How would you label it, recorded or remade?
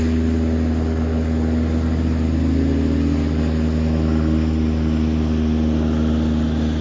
recorded